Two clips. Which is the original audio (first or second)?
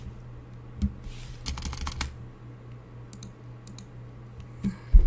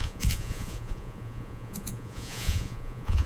first